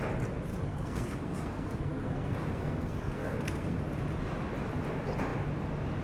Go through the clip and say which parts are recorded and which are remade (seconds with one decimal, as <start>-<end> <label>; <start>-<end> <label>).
0.0-0.5 recorded; 0.5-3.8 remade; 3.8-6.0 recorded